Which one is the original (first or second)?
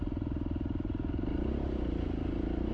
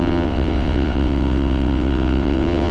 first